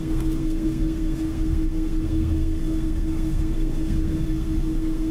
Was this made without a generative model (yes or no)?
no